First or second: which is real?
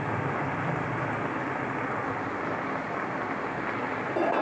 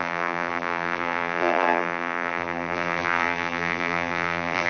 first